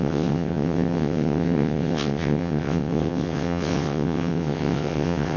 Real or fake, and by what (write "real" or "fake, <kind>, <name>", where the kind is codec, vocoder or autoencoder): fake, vocoder, WaveNeXt